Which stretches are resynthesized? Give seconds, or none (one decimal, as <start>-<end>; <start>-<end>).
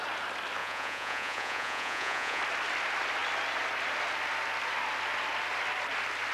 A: 0.6-2.4